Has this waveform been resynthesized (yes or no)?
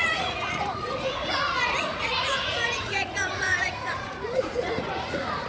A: yes